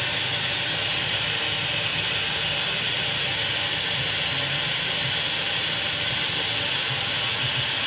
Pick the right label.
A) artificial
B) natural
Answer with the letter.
B